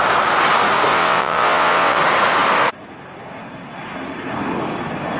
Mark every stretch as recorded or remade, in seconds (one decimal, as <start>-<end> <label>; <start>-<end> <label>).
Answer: 0.0-0.9 recorded; 0.9-2.0 remade; 2.0-5.2 recorded